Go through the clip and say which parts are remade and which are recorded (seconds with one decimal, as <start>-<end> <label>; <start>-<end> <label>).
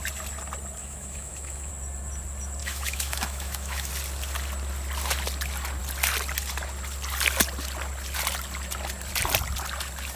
0.0-0.8 recorded; 0.8-1.7 remade; 1.7-2.6 recorded; 2.6-3.9 remade; 3.9-10.2 recorded